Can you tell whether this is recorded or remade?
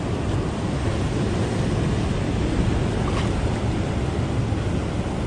recorded